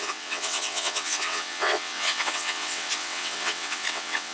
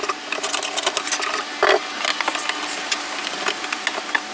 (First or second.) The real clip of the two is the second